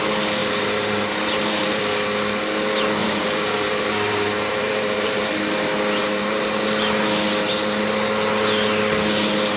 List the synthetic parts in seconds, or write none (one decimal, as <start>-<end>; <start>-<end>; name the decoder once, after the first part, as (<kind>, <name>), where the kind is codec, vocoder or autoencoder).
0.4-1.8 (vocoder, BigVGAN v2); 3.0-5.3; 6.0-6.5